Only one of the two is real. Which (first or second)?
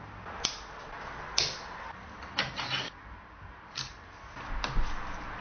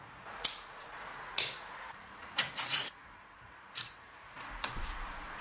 first